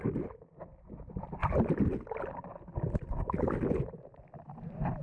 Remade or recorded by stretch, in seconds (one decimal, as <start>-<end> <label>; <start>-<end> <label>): 0.0-5.0 recorded